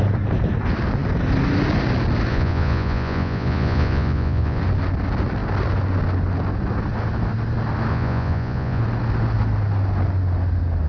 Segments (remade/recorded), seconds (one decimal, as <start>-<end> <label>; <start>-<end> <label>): 0.0-2.3 recorded; 2.3-4.6 remade; 4.6-7.9 recorded; 7.9-8.8 remade; 8.8-10.9 recorded